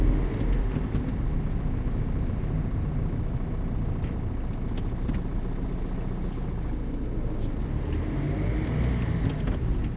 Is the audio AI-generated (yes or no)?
no